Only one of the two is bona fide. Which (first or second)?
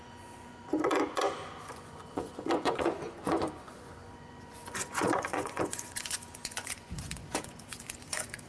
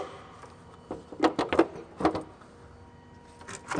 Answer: second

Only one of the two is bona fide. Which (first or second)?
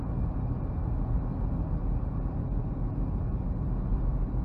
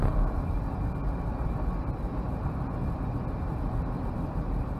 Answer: first